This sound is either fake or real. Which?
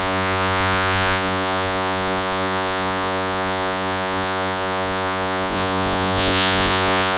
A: fake